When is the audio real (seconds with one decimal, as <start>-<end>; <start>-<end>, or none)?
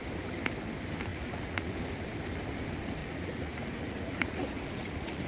0.0-1.1; 1.8-3.0